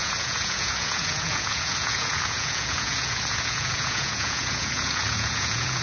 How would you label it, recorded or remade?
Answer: remade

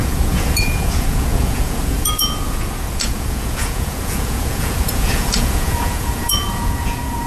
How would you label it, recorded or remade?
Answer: remade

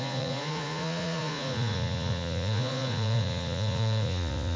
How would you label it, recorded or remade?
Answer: remade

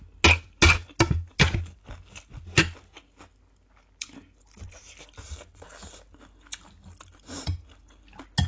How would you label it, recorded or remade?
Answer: recorded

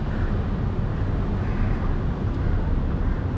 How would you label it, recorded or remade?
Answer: recorded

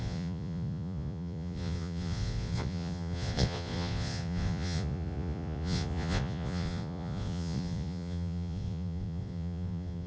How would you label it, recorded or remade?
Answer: remade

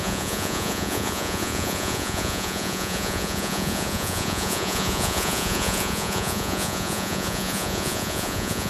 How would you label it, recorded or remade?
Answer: remade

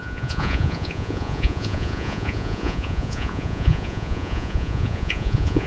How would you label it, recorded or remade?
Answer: remade